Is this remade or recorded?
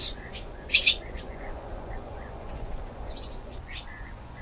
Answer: remade